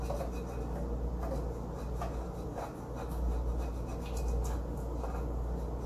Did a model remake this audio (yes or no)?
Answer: no